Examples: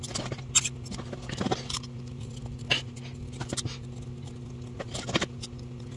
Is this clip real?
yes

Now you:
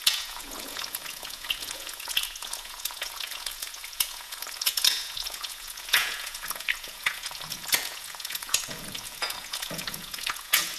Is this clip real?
no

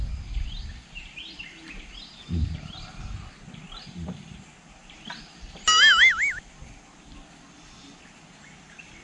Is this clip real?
yes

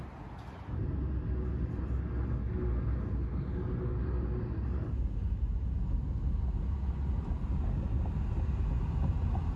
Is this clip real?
yes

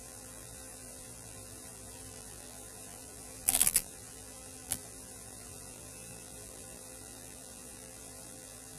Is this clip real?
no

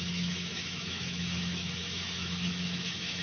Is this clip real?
no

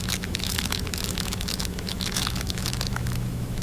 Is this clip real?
no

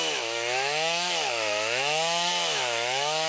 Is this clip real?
no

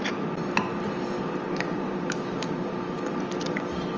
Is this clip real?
yes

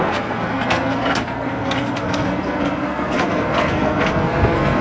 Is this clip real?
no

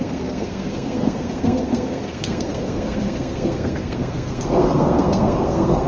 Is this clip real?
no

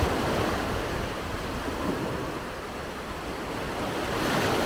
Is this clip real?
yes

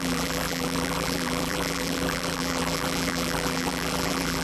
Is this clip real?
no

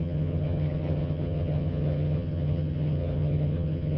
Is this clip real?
no